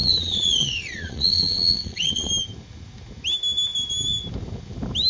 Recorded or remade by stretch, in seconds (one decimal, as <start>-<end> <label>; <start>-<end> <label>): 0.0-2.3 remade; 2.3-5.1 recorded